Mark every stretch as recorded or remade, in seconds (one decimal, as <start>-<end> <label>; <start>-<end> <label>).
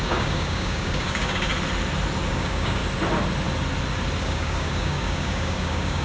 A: 0.0-1.5 remade; 1.5-2.3 recorded; 2.3-2.8 remade; 2.8-4.2 recorded; 4.2-6.0 remade